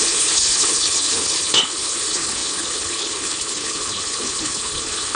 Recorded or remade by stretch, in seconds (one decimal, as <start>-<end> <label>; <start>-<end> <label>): 0.0-5.2 remade